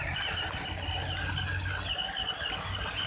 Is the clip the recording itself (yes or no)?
yes